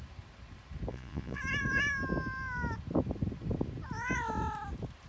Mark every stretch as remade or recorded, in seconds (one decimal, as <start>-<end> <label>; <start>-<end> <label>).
0.0-0.9 recorded; 0.9-1.4 remade; 1.4-5.1 recorded